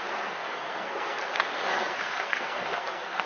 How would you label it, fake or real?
fake